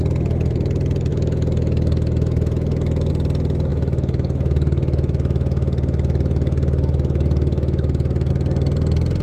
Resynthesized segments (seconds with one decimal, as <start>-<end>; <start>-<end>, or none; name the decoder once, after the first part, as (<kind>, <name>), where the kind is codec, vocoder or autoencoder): 1.1-3.1 (autoencoder, DAC-VAE); 3.7-8.3